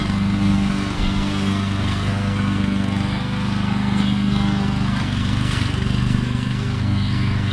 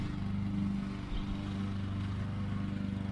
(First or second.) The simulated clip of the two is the first